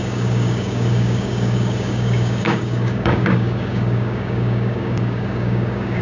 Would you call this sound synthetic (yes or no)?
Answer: yes